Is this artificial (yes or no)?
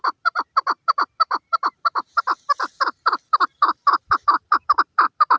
yes